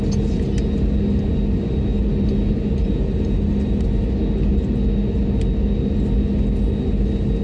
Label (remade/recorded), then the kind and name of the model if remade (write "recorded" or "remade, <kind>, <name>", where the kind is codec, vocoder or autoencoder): recorded